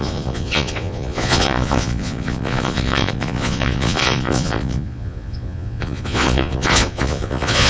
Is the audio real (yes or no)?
no